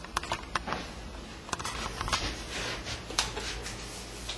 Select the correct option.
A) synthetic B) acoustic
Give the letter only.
B